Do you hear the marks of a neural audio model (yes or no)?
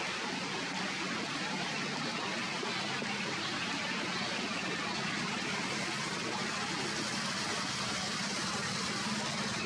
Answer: no